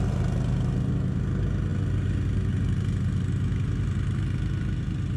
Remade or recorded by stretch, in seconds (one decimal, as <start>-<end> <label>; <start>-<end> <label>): 0.0-5.2 recorded

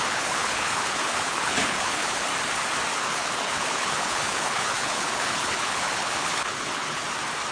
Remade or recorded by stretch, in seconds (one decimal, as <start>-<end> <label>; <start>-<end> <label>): 0.0-2.3 remade; 2.3-2.9 recorded; 2.9-7.0 remade; 7.0-7.5 recorded

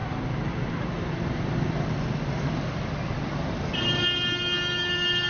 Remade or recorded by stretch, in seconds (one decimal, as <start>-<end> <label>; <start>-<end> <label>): 0.0-5.3 recorded

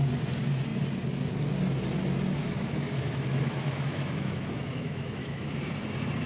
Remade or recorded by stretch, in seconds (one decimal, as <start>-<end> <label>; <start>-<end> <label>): 0.0-2.4 recorded; 2.4-5.7 remade; 5.7-6.3 recorded

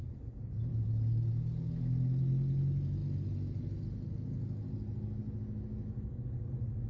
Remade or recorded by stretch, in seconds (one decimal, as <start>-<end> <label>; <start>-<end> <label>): 0.0-6.9 recorded

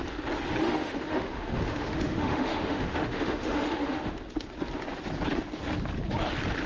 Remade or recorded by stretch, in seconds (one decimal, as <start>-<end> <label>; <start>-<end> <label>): 0.0-0.6 recorded; 0.6-4.2 remade; 4.2-6.7 recorded

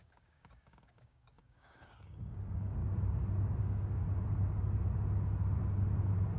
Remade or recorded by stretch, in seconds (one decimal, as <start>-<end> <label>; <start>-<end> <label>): 0.0-2.8 remade; 2.8-3.6 recorded; 3.6-4.0 remade; 4.0-6.4 recorded